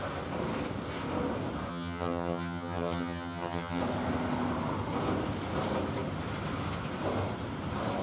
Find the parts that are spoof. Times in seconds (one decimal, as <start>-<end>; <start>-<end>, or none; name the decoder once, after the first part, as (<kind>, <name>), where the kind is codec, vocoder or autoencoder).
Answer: 1.7-3.8 (vocoder, HiFi-GAN)